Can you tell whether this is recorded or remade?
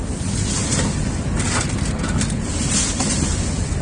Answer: recorded